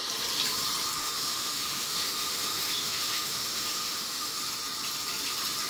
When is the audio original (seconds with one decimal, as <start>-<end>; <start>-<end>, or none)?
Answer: 0.0-1.0; 4.4-5.7